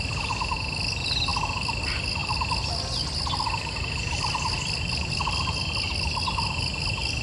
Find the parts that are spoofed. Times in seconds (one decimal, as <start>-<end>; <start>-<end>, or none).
none